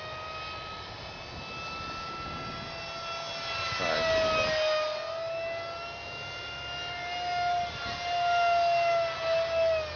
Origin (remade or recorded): recorded